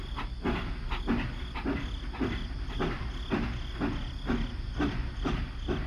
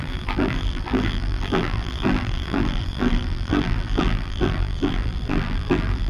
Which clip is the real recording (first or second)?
first